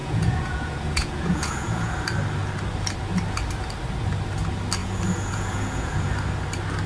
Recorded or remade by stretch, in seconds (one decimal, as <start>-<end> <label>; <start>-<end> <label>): 0.0-1.9 remade; 1.9-4.8 recorded; 4.8-6.1 remade; 6.1-6.9 recorded